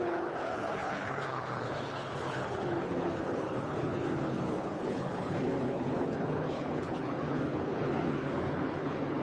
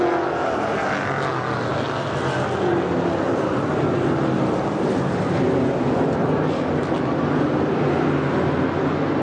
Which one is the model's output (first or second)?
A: first